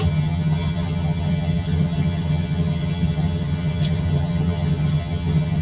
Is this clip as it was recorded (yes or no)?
no